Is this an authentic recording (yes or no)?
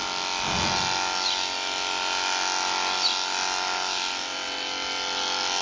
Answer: yes